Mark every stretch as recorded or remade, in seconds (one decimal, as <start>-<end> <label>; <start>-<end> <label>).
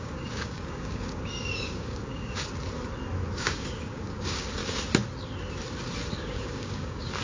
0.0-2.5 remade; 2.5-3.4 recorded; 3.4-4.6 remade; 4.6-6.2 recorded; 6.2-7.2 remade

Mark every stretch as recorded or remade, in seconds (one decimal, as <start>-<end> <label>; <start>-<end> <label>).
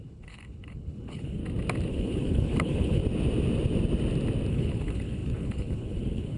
0.0-1.4 remade; 1.4-1.9 recorded; 1.9-3.0 remade; 3.0-4.5 recorded; 4.5-6.4 remade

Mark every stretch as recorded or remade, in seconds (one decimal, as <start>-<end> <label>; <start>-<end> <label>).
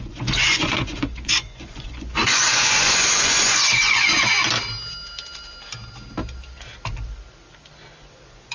0.0-4.1 remade; 4.1-8.0 recorded; 8.0-8.5 remade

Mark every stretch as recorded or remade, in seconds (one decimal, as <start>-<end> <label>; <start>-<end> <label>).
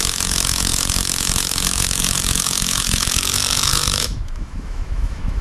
0.0-5.4 remade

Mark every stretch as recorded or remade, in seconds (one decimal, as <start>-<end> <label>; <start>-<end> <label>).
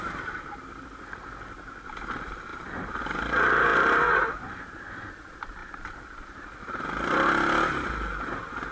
0.0-2.5 recorded; 2.5-3.2 remade; 3.2-8.7 recorded